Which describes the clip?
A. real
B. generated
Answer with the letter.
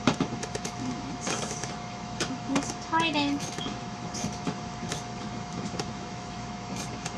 B